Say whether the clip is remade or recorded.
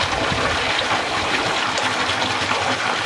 recorded